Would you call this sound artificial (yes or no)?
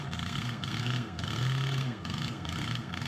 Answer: yes